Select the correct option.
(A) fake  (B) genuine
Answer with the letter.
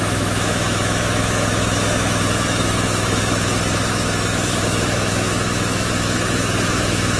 A